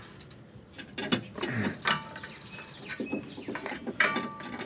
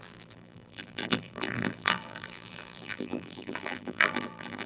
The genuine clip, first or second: first